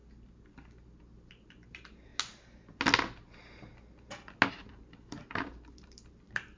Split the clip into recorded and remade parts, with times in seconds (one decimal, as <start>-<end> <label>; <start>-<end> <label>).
0.0-1.7 recorded; 1.7-2.1 remade; 2.1-4.5 recorded; 4.5-6.6 remade